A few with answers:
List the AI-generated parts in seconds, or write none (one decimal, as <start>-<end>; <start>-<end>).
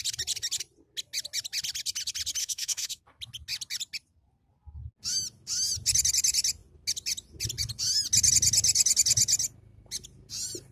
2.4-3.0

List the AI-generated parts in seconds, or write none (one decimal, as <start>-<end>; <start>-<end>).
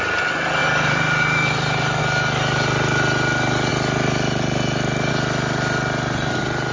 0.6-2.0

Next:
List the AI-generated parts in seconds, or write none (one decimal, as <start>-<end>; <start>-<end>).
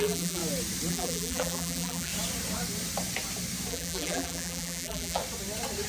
0.0-0.4; 0.9-2.1; 3.7-5.2